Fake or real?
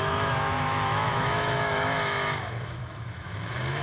fake